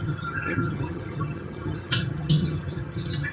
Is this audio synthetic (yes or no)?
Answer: yes